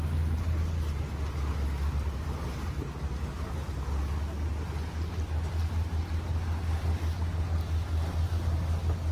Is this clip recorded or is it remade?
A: recorded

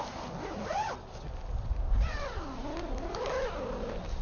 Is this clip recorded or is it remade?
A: recorded